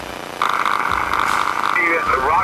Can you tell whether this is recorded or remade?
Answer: recorded